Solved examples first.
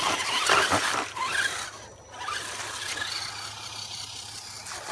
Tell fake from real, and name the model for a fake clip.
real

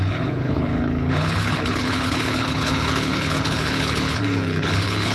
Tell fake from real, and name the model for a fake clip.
fake, codec, HILCodec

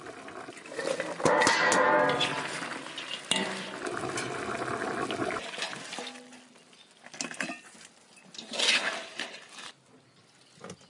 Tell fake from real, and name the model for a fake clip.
real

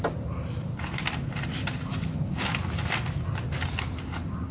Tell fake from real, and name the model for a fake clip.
real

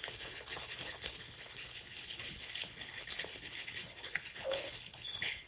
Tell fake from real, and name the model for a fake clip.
fake, codec, HILCodec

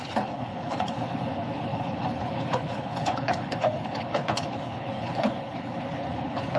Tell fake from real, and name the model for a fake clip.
fake, codec, HILCodec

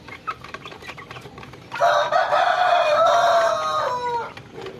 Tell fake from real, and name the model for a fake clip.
real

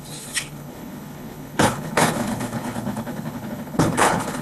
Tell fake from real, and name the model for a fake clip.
fake, codec, HILCodec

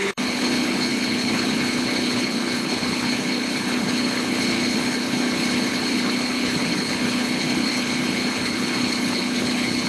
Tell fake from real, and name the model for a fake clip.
fake, codec, HILCodec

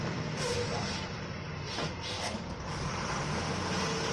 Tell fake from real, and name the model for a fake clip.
real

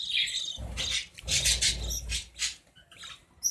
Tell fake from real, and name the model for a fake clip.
real